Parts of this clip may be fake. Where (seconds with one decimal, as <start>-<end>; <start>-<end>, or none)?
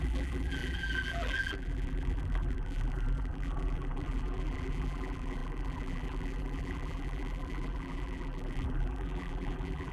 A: 0.0-9.9